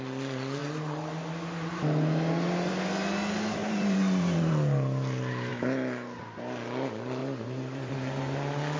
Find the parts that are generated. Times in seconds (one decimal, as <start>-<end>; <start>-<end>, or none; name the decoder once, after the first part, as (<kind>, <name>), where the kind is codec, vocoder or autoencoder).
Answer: 3.6-4.5 (vocoder, BigVGAN v2); 7.2-7.9